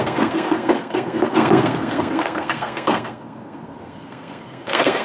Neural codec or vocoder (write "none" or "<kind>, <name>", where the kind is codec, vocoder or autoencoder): codec, SNAC